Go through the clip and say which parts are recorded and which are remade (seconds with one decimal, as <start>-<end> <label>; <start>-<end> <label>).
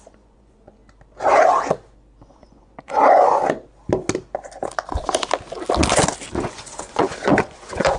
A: 0.0-0.8 remade; 0.8-2.3 recorded; 2.3-3.4 remade; 3.4-6.4 recorded; 6.4-8.0 remade